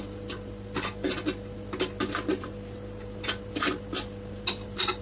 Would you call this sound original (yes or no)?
yes